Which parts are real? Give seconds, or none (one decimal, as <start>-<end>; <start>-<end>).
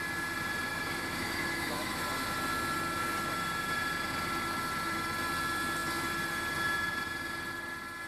0.0-0.7; 2.0-8.1